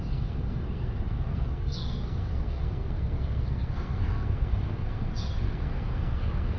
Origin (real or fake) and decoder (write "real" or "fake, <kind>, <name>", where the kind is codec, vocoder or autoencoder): fake, codec, SNAC